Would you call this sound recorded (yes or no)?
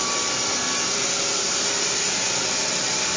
yes